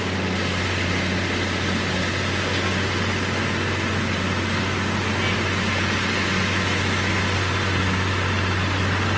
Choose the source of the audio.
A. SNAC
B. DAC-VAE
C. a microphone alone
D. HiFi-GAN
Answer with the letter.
C